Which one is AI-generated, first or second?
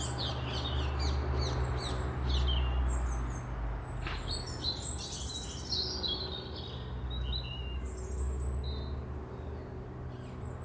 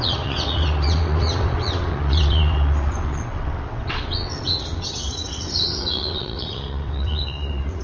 second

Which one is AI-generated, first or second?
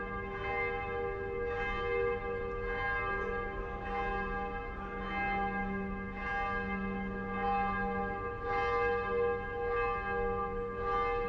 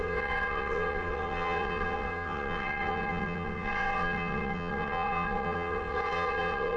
second